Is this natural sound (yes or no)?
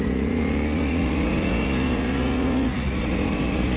no